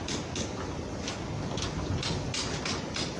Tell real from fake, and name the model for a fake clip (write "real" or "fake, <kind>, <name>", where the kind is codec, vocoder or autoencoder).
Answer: real